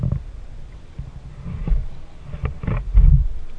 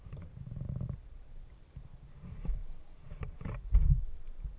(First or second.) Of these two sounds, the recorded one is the first